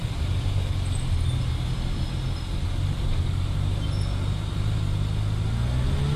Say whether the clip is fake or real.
real